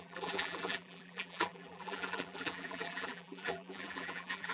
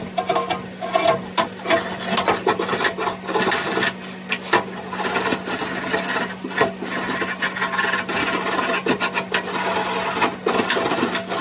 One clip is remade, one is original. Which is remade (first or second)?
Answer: first